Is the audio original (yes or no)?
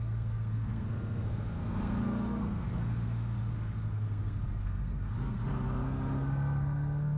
no